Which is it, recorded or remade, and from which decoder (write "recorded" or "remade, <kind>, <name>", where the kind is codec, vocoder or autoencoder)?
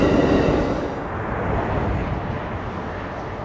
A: recorded